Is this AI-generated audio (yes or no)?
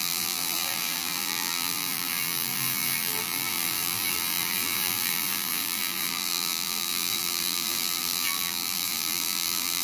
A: yes